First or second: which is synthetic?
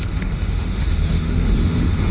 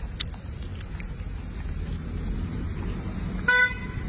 first